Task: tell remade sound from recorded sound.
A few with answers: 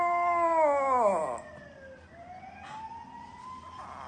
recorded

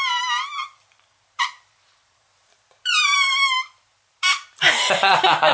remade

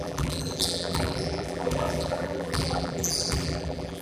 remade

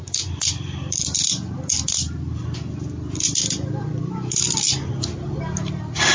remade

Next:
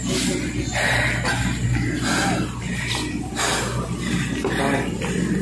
recorded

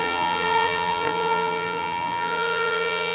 remade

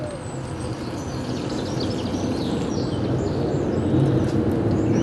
recorded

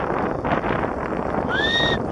remade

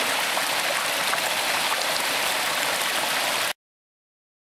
recorded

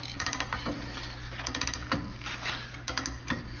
recorded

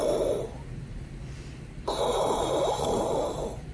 remade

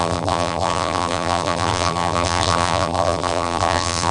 remade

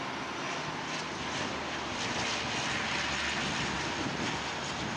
recorded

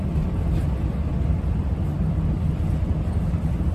remade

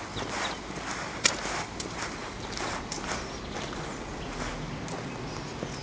recorded